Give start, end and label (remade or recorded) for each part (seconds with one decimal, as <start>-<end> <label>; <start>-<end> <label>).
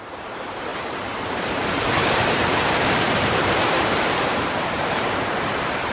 0.0-5.9 remade